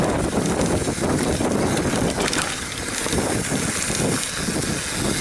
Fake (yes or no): no